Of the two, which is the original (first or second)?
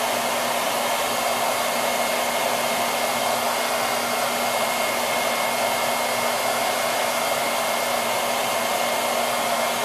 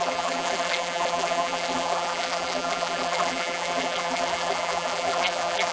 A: first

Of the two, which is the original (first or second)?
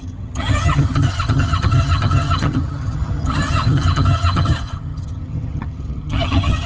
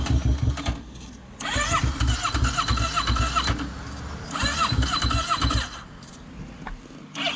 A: second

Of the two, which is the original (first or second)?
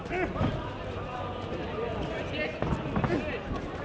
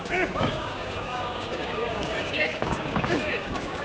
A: first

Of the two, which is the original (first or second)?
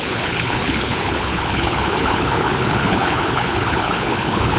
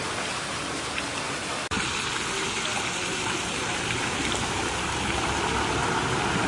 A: second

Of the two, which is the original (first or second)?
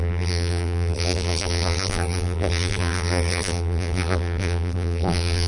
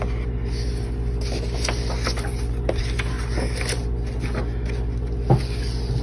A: second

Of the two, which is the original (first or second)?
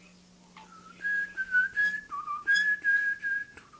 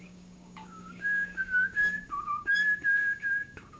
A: first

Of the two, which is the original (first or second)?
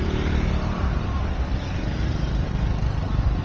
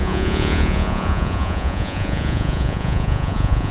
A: first